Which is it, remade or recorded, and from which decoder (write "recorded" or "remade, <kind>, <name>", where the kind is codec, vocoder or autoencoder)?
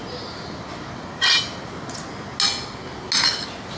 recorded